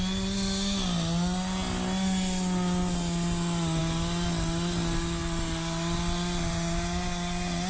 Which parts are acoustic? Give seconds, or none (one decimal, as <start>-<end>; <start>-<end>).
0.0-7.7